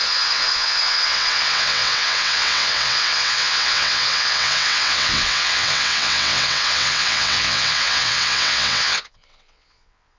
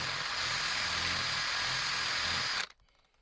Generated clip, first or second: first